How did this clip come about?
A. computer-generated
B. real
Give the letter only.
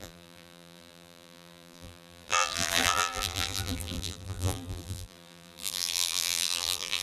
A